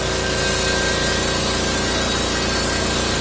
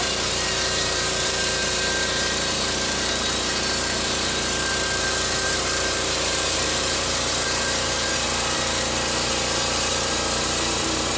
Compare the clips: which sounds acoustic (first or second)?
first